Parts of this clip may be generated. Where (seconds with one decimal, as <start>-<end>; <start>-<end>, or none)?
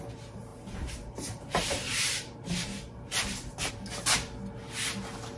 0.5-3.7